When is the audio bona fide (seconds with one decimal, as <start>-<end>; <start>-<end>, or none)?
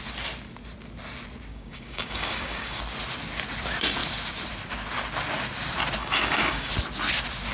0.0-1.5; 2.8-6.0; 6.7-7.5